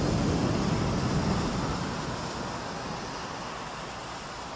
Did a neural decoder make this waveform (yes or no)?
no